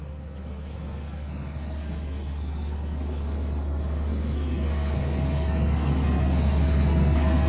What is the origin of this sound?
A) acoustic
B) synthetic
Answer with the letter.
B